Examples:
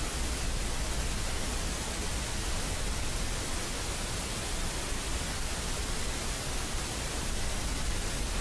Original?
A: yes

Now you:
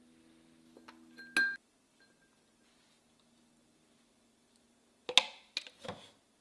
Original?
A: yes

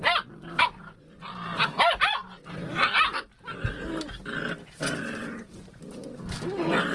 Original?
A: yes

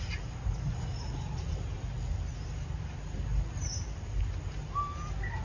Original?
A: yes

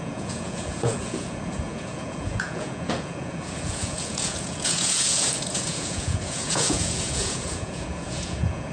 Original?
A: no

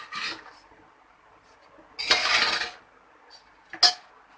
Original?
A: yes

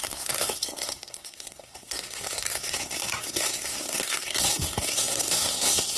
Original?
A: no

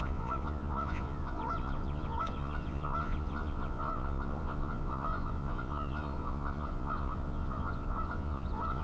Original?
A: no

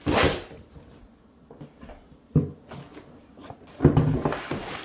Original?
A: yes